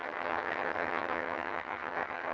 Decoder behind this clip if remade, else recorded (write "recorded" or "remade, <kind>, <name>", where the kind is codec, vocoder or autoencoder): remade, vocoder, HiFi-GAN